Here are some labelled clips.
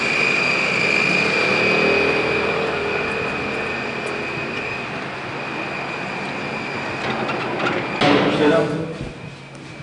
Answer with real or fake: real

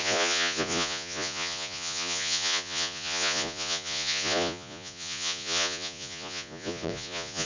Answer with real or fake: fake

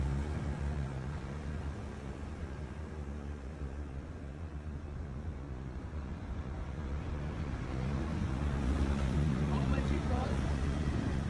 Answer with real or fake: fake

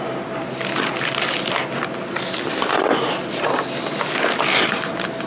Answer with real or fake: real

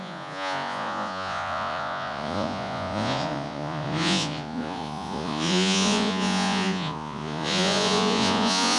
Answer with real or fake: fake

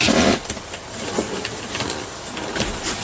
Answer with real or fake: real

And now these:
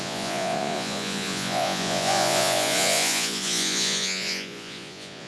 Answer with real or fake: fake